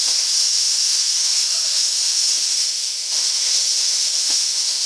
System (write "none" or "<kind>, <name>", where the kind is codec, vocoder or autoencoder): autoencoder, DAC-VAE